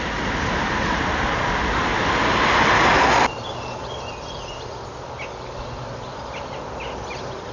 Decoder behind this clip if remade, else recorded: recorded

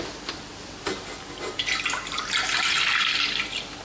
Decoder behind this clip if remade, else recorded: recorded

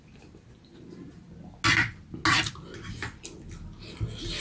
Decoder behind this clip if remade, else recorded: recorded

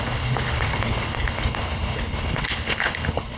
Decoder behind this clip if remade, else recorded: remade, codec, HILCodec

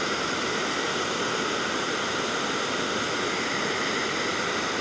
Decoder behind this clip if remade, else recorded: recorded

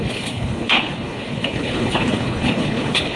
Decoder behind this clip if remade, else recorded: remade, codec, HILCodec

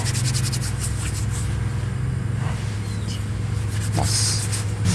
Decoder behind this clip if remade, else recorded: recorded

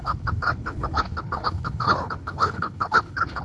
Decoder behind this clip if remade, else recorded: remade, codec, HILCodec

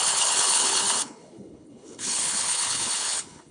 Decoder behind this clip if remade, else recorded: remade, codec, HILCodec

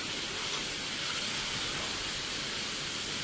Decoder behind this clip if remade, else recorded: recorded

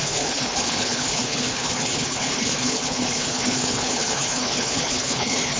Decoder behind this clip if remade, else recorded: remade, codec, HILCodec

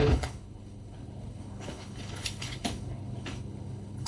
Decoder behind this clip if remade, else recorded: remade, codec, HILCodec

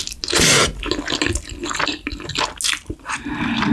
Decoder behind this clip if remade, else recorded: recorded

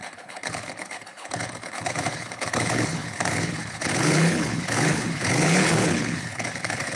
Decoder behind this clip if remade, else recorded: remade, codec, HILCodec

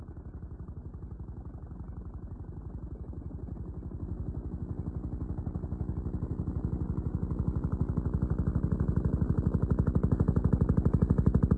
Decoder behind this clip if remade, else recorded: recorded